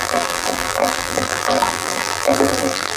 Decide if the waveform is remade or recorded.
remade